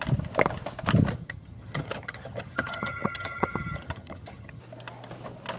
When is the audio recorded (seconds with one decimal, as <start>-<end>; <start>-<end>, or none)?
0.0-1.2; 4.6-5.6